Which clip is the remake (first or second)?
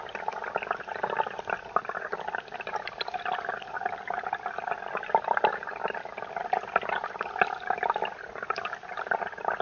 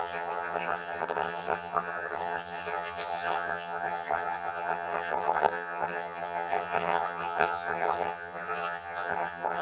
second